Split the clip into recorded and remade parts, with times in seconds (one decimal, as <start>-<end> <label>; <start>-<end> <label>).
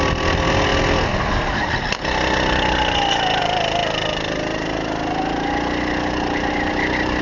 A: 0.0-7.2 recorded